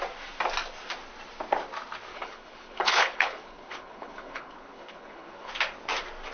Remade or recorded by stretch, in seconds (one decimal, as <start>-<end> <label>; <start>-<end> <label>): 0.0-2.1 recorded; 2.1-5.5 remade; 5.5-6.3 recorded